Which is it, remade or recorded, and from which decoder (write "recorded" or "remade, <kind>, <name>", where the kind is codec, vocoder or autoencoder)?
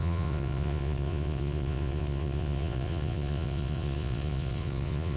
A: remade, vocoder, Vocos